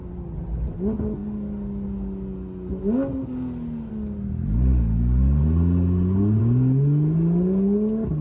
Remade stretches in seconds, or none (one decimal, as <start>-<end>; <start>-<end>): none